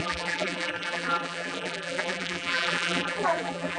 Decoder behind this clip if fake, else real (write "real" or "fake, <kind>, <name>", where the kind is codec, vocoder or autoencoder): fake, vocoder, BigVGAN v2